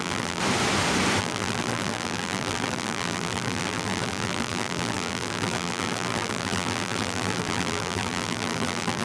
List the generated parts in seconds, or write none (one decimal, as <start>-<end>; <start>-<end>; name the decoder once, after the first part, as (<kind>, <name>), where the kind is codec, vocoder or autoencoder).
0.0-0.4 (vocoder, BigVGAN v2); 1.2-9.0